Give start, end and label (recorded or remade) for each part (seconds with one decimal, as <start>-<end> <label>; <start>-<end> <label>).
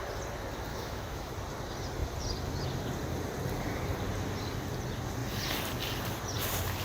0.0-0.7 recorded; 0.7-1.3 remade; 1.3-6.8 recorded